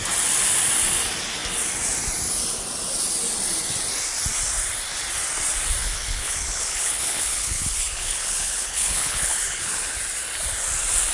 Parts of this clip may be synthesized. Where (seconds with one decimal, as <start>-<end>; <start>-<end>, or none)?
5.8-10.0